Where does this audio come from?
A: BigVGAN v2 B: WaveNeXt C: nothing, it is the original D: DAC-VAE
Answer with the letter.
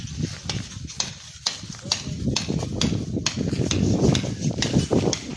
C